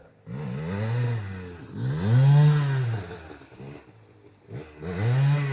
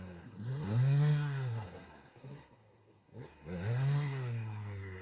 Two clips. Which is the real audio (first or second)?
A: first